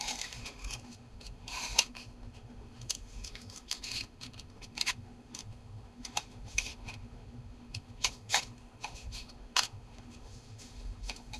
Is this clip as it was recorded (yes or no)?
no